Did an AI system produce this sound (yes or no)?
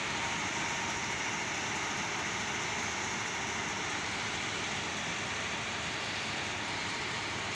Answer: no